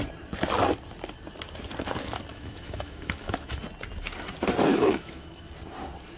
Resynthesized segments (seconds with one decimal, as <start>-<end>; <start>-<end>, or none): 2.3-3.6; 4.7-5.4